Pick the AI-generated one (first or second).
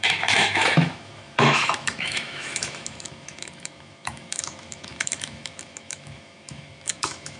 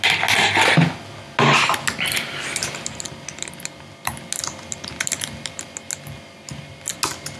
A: first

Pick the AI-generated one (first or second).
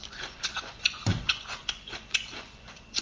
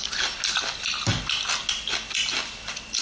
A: first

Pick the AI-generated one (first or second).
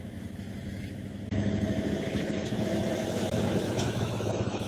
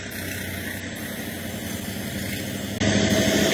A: first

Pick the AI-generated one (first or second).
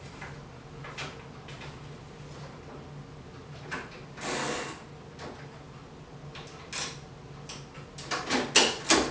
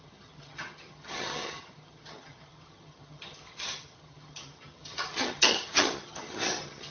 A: second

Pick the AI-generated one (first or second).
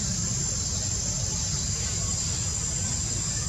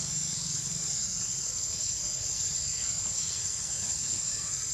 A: second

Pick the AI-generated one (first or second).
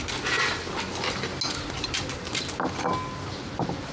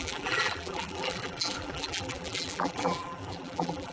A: second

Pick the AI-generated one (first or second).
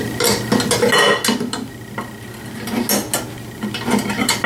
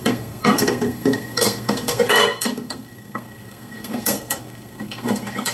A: second